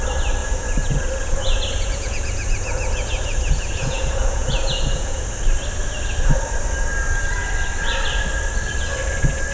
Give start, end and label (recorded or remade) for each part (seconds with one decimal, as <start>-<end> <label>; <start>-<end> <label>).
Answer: 0.0-0.4 recorded; 0.4-5.2 remade; 5.2-9.5 recorded